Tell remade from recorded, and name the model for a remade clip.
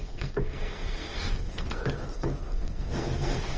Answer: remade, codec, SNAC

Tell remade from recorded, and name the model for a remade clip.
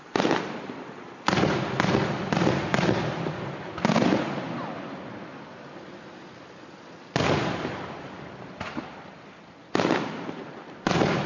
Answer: recorded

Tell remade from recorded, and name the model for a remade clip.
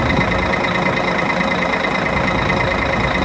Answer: recorded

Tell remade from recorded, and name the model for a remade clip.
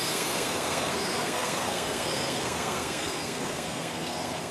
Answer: remade, codec, SNAC